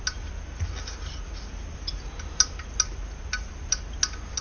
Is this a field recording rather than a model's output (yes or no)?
yes